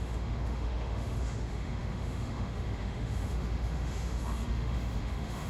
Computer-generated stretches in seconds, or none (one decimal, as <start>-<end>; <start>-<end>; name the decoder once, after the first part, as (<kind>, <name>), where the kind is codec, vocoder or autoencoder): 0.0-5.5 (autoencoder, DAC-VAE)